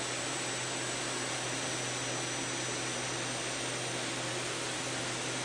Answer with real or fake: real